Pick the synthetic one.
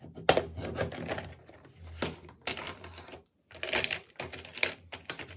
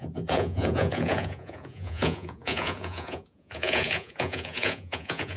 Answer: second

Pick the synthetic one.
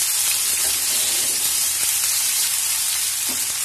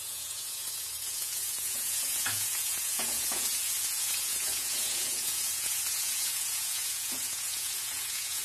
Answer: second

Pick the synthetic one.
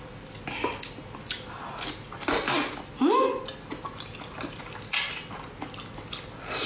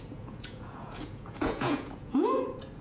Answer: second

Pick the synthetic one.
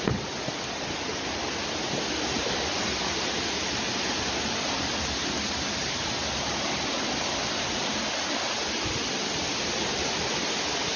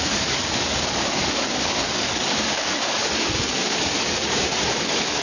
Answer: second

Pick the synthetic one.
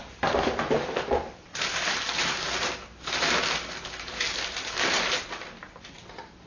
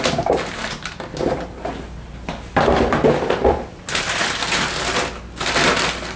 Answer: first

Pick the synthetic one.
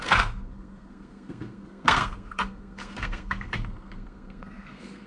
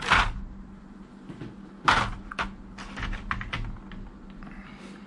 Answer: first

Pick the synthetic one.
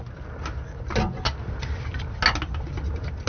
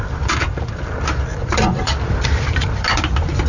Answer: second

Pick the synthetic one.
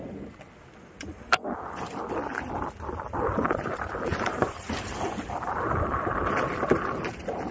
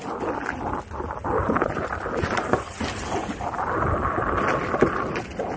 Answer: first